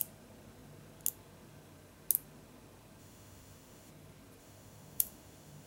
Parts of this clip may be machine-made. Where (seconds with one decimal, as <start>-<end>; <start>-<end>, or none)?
3.0-3.9; 4.4-5.7